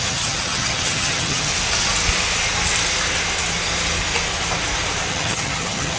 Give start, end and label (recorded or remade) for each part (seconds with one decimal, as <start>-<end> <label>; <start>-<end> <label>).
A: 0.0-1.5 remade; 1.5-5.1 recorded; 5.1-6.0 remade